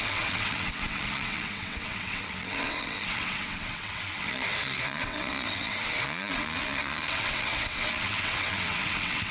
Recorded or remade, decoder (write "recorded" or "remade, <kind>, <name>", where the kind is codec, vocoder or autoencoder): remade, vocoder, WaveNeXt